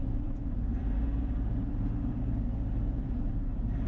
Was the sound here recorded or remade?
remade